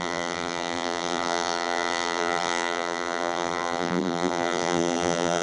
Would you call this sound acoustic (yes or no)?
no